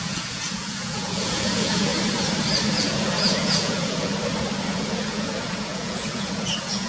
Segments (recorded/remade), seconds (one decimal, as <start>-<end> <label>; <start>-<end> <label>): 0.0-1.9 remade; 1.9-2.7 recorded; 2.7-4.1 remade; 4.1-4.7 recorded; 4.7-6.9 remade